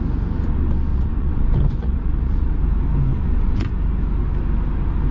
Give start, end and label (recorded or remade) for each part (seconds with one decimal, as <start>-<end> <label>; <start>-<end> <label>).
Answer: 0.0-0.9 recorded; 0.9-2.6 remade; 2.6-3.1 recorded; 3.1-3.7 remade; 3.7-5.1 recorded